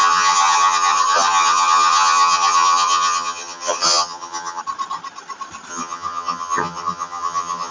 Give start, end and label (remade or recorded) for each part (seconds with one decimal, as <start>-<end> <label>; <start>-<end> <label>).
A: 0.0-4.6 remade; 4.6-5.7 recorded; 5.7-7.7 remade